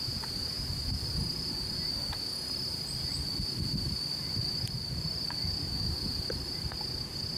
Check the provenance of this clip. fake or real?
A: real